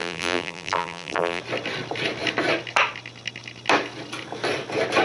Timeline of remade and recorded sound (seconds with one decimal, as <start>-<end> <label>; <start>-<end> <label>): 0.0-1.4 remade; 1.4-5.0 recorded